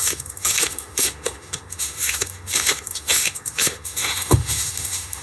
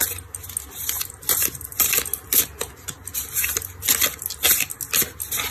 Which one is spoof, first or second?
first